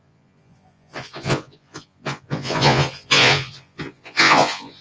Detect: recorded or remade remade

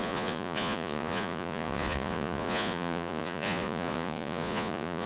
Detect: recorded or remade remade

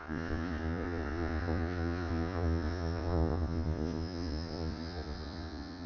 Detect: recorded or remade remade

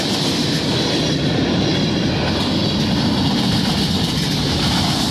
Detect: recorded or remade recorded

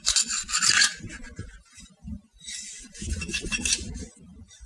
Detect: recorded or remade recorded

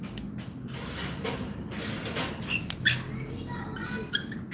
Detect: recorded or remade recorded